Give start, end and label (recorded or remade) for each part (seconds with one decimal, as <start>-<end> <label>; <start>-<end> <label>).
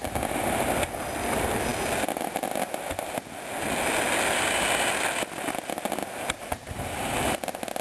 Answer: 0.0-7.8 recorded